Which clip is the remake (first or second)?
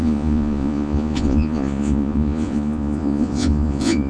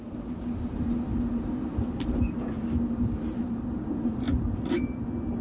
first